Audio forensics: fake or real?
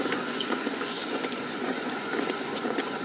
fake